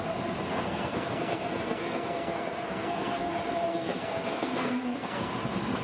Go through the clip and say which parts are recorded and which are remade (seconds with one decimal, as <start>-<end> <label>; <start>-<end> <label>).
0.0-0.5 recorded; 0.5-3.3 remade; 3.3-3.7 recorded; 3.7-5.3 remade; 5.3-5.8 recorded

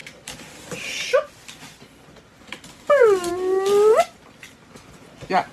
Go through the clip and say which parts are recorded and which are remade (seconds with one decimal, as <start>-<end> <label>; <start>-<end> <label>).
0.0-5.5 recorded

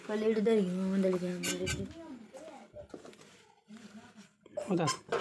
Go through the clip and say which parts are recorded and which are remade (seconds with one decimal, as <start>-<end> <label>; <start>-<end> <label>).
0.0-5.2 recorded

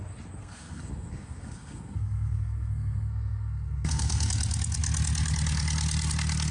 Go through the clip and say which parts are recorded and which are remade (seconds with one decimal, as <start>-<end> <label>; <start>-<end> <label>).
0.0-0.4 recorded; 0.4-4.3 remade; 4.3-6.5 recorded

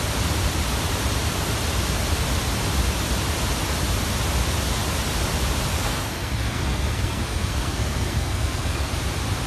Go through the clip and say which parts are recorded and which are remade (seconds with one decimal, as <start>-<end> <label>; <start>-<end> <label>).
0.0-5.7 recorded; 5.7-8.9 remade; 8.9-9.5 recorded